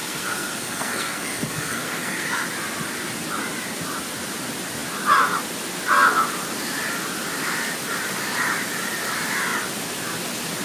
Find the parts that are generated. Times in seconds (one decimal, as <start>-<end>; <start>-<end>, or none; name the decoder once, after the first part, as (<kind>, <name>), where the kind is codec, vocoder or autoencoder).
0.0-2.4 (codec, SNAC)